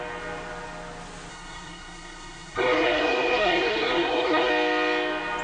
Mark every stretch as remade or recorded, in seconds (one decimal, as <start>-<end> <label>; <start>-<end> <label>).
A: 0.0-1.3 recorded; 1.3-4.5 remade; 4.5-5.4 recorded